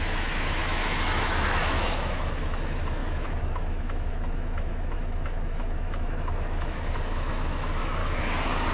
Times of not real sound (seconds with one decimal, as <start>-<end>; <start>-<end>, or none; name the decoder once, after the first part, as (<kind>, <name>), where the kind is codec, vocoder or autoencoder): 0.0-8.0 (autoencoder, DAC-VAE)